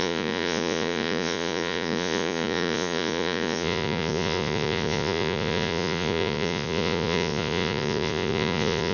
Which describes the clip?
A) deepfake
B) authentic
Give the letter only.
A